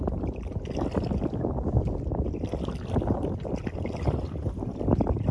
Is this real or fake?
real